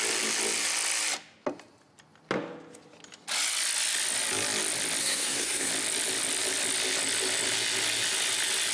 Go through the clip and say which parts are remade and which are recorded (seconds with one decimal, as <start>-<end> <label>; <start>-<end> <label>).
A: 0.0-5.0 recorded; 5.0-5.7 remade; 5.7-8.7 recorded